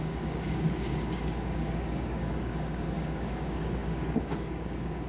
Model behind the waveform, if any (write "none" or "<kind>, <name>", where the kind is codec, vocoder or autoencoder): codec, DAC